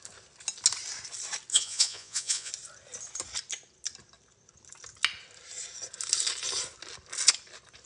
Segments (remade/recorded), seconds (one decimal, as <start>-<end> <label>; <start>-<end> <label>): 0.0-1.5 recorded; 1.5-2.5 remade; 2.5-7.9 recorded